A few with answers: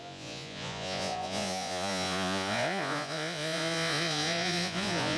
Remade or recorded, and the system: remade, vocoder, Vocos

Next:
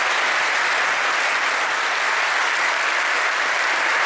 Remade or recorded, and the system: remade, vocoder, BigVGAN v2